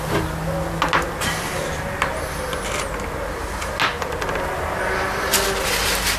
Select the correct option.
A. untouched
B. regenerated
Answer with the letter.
A